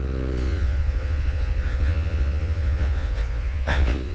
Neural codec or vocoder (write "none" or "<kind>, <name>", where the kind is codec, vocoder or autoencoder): vocoder, Vocos